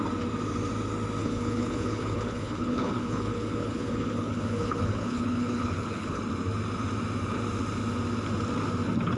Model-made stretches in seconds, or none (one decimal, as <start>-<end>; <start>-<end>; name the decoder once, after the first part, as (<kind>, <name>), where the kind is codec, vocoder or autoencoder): 1.2-6.2 (codec, HILCodec)